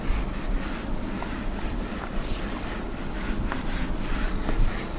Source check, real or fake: fake